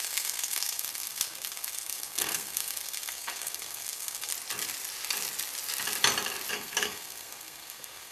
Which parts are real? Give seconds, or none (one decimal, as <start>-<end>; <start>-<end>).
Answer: 4.3-6.5